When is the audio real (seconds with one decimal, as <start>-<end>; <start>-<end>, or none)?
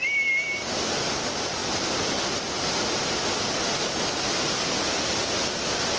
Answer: 0.0-6.0